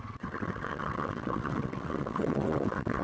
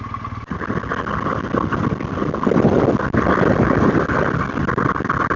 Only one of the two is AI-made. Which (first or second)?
first